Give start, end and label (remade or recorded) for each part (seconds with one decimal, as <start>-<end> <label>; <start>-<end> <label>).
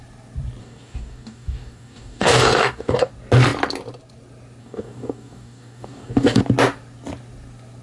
0.0-0.6 recorded; 0.6-3.1 remade; 3.1-4.6 recorded; 4.6-6.4 remade; 6.4-7.8 recorded